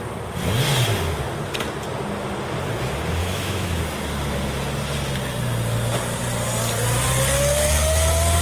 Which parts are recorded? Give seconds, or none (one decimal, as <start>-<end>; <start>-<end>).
0.0-3.2; 3.8-8.4

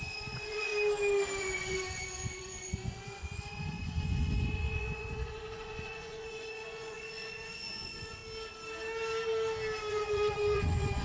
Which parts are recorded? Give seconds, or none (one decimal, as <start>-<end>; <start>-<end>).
0.7-1.4; 8.2-9.9

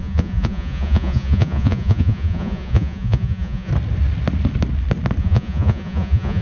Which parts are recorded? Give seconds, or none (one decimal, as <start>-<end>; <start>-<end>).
3.7-5.2

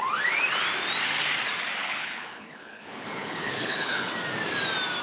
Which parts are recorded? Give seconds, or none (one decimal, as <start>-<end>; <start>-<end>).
0.0-1.8; 4.1-5.0

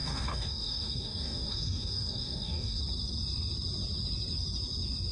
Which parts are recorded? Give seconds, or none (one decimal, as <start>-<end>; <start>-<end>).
2.8-5.1

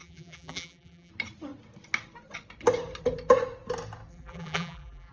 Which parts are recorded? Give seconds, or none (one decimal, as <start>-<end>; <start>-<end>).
1.1-4.1

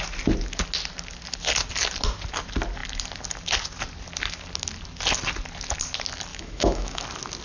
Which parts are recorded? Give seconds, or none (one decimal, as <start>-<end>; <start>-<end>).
0.0-6.3; 7.0-7.4